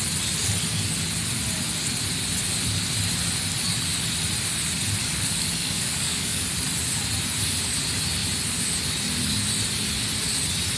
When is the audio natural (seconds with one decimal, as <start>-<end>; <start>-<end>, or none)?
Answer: 0.0-5.0; 6.5-10.8